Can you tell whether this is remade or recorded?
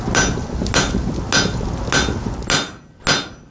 recorded